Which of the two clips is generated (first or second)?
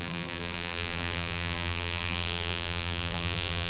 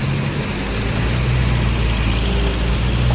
first